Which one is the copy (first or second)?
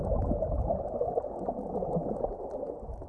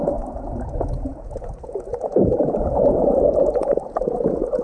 second